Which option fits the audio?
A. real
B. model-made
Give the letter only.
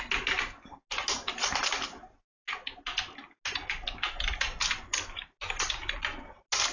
A